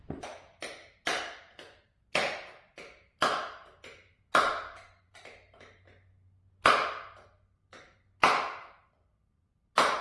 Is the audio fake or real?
real